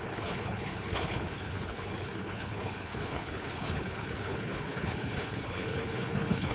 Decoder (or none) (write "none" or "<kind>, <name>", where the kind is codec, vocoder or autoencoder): codec, HILCodec